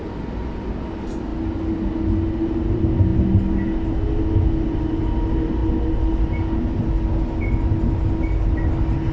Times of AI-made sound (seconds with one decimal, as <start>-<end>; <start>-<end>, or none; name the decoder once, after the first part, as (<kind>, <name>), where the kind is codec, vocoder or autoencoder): none